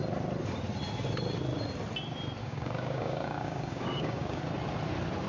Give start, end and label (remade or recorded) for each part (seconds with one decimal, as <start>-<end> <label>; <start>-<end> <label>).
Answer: 0.0-2.4 recorded; 2.4-4.4 remade; 4.4-5.3 recorded